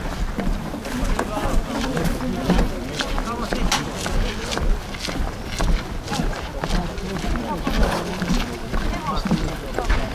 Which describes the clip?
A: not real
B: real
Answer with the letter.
B